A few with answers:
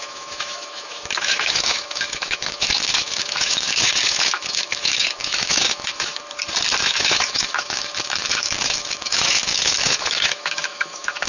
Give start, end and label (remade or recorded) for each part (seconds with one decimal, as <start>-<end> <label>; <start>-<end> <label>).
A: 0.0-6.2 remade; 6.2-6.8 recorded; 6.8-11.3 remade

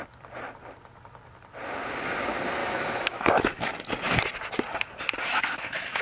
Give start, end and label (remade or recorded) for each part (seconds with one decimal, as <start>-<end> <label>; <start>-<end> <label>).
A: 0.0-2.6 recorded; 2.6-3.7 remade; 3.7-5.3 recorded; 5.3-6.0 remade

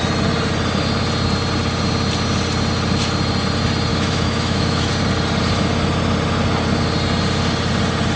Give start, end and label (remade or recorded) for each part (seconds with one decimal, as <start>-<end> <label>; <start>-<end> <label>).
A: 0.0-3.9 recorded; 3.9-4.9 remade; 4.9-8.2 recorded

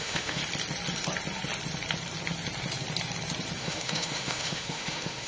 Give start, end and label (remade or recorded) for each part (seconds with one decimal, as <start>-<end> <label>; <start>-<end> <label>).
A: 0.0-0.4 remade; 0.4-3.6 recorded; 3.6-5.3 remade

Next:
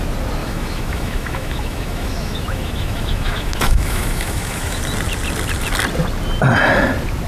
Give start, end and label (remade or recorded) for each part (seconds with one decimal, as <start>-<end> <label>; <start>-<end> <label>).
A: 0.0-0.4 recorded; 0.4-4.8 remade; 4.8-7.3 recorded

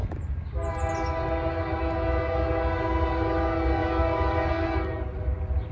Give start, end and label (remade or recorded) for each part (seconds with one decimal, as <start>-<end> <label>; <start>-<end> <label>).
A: 0.0-5.7 recorded

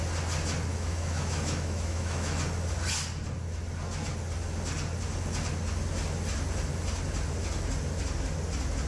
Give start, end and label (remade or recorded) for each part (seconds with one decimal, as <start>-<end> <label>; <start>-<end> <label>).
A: 0.0-0.7 recorded; 0.7-2.4 remade; 2.4-8.9 recorded